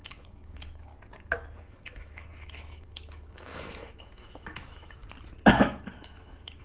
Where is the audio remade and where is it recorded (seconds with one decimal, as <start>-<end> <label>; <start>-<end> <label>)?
0.0-0.9 remade; 0.9-1.6 recorded; 1.6-5.0 remade; 5.0-5.5 recorded; 5.5-6.6 remade